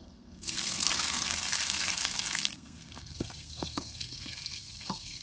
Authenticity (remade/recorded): remade